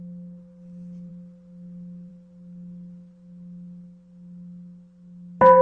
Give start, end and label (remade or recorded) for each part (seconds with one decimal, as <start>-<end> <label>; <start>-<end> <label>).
0.0-5.6 recorded